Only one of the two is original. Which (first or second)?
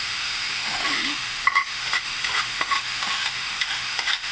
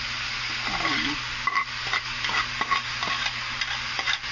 second